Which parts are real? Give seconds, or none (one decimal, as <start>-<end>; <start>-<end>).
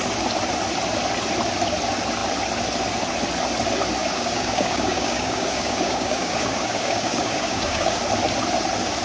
0.0-4.0; 8.0-9.0